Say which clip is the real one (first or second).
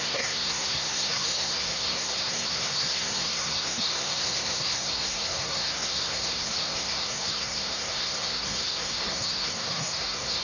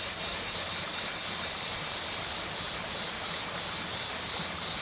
second